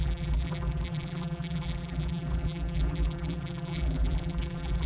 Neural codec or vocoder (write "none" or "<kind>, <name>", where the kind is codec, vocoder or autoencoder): vocoder, BigVGAN v2